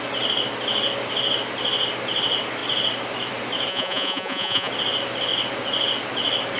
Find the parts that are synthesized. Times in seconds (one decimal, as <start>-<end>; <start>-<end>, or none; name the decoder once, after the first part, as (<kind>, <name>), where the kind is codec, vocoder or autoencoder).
3.7-4.7 (vocoder, Vocos)